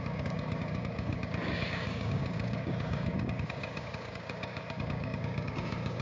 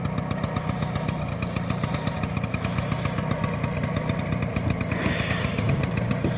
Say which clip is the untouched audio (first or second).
second